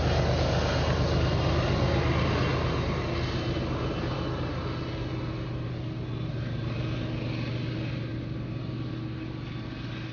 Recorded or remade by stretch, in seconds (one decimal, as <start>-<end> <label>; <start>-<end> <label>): 0.0-10.1 recorded

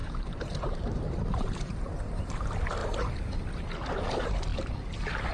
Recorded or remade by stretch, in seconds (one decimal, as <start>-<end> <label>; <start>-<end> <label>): 0.0-2.3 remade; 2.3-5.3 recorded

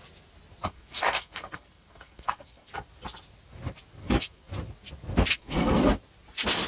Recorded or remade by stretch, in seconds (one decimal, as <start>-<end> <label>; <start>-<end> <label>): 0.0-0.6 recorded; 0.6-2.7 remade; 2.7-4.0 recorded; 4.0-4.5 remade; 4.5-5.3 recorded; 5.3-5.9 remade; 5.9-6.7 recorded

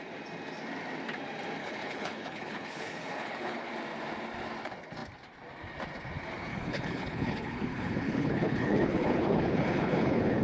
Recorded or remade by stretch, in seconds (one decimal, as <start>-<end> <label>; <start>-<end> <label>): 0.0-1.6 recorded; 1.6-3.7 remade; 3.7-6.5 recorded; 6.5-10.4 remade